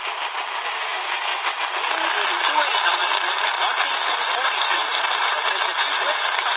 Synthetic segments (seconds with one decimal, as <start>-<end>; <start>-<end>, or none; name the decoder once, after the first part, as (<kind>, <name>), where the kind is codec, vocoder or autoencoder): none